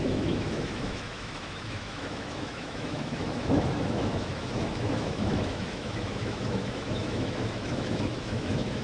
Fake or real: fake